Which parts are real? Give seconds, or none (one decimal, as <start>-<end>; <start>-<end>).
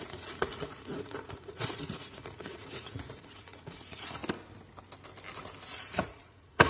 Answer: 4.2-5.7